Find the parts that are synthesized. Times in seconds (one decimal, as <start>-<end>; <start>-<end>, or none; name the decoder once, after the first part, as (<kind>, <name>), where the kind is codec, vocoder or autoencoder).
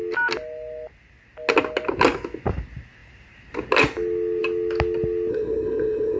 5.3-6.2 (codec, SNAC)